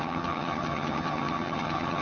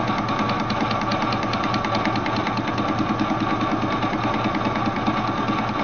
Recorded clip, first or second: second